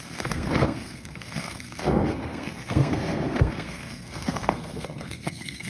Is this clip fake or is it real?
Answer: fake